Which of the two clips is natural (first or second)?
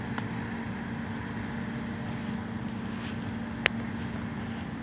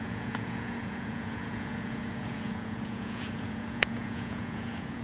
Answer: first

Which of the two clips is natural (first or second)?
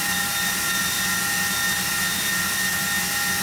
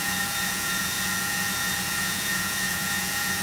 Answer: first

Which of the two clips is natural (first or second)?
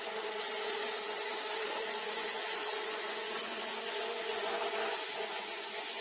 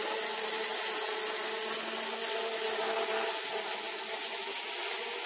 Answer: second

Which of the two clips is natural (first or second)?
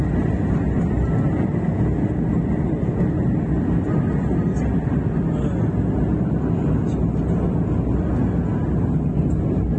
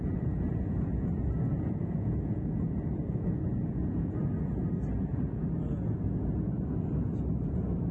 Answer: first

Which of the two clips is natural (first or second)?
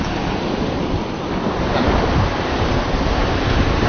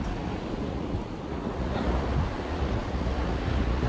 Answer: first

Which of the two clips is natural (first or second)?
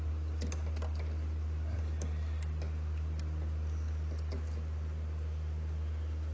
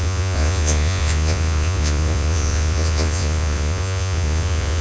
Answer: first